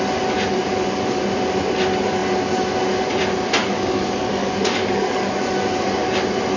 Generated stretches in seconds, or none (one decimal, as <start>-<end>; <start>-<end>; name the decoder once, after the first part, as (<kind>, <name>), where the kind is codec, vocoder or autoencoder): 3.6-5.3 (codec, DAC)